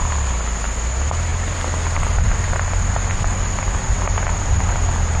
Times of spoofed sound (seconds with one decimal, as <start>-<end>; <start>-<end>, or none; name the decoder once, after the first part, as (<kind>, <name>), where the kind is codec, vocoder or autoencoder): none